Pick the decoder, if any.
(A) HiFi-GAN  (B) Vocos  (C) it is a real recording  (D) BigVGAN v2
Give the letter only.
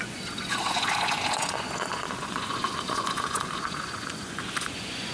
B